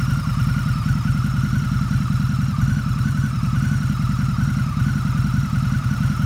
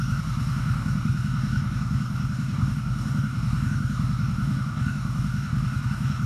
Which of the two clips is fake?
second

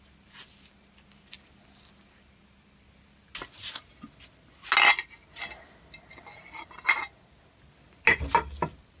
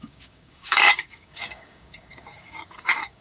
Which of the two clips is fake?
second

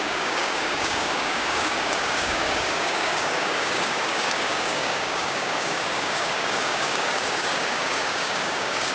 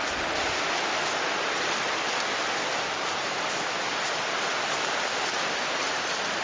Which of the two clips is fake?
first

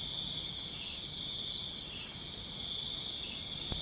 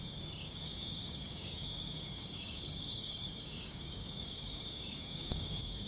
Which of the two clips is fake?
second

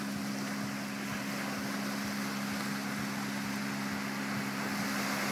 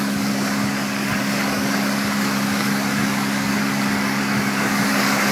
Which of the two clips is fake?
second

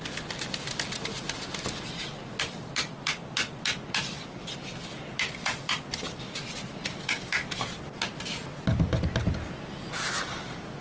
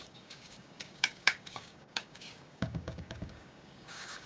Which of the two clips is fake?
second